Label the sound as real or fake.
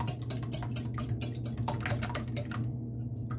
real